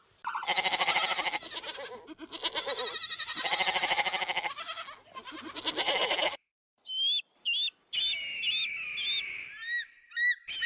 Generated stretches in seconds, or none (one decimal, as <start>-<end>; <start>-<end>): none